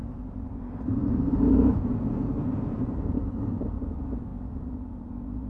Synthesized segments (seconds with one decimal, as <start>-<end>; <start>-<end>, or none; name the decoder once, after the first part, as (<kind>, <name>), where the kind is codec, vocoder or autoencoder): 0.0-3.3 (vocoder, BigVGAN v2)